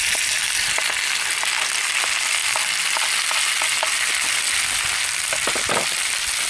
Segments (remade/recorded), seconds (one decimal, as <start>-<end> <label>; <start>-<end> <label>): 0.0-6.5 recorded